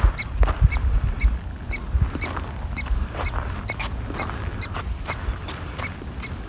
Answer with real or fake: real